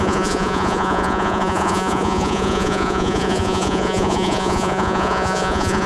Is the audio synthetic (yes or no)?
yes